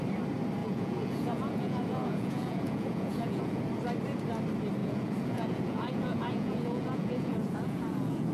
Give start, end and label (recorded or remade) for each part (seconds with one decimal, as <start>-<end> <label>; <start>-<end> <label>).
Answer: 0.0-0.6 recorded; 0.6-3.6 remade; 3.6-4.8 recorded; 4.8-8.3 remade